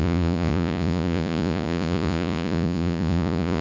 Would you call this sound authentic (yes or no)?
no